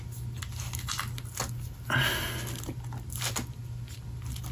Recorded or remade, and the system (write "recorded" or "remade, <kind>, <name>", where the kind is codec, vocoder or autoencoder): recorded